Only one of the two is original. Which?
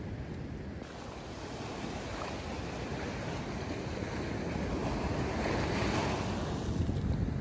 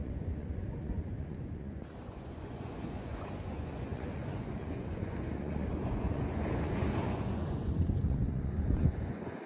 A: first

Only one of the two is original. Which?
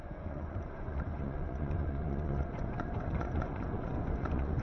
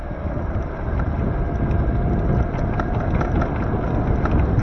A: second